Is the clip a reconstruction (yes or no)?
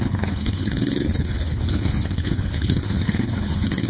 yes